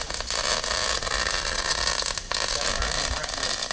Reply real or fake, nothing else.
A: real